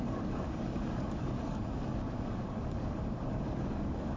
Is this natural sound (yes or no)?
no